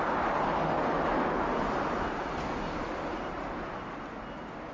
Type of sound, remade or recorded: recorded